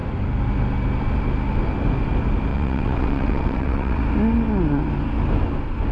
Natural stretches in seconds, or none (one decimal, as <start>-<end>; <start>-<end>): 0.0-2.5; 4.0-5.9